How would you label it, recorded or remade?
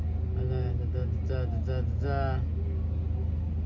recorded